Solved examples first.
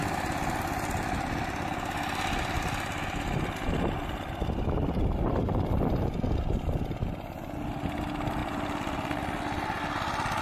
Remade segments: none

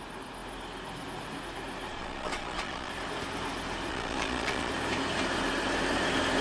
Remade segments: 1.9-2.9 (vocoder, Vocos); 3.9-4.7

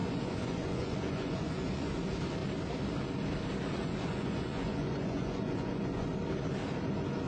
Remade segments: 0.0-1.9 (vocoder, Vocos); 3.8-6.1

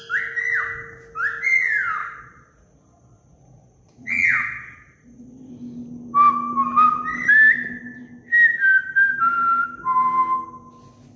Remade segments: 2.0-5.5 (vocoder, Vocos)

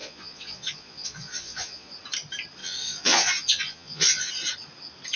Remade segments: 0.0-1.9 (vocoder, Vocos); 2.6-4.3

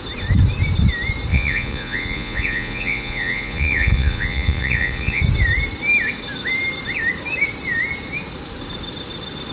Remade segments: 1.3-5.2 (vocoder, Vocos)